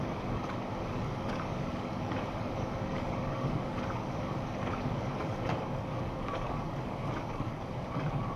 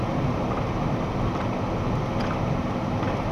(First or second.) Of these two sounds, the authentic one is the second